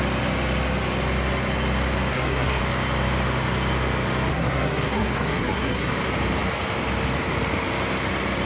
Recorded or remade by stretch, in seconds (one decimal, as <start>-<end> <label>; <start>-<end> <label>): 0.0-2.1 recorded; 2.1-2.6 remade; 2.6-4.3 recorded; 4.3-5.9 remade; 5.9-8.5 recorded